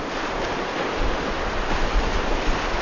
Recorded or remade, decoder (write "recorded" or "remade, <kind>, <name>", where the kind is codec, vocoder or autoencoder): recorded